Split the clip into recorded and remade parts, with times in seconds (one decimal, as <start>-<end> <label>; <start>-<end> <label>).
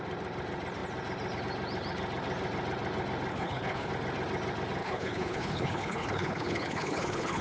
0.0-3.3 recorded; 3.3-3.9 remade; 3.9-4.8 recorded; 4.8-7.4 remade